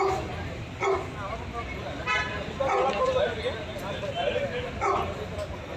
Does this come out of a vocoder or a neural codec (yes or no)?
no